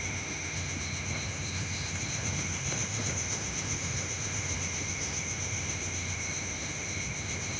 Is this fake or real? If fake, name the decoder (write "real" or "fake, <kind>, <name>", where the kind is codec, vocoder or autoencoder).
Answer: fake, autoencoder, DAC-VAE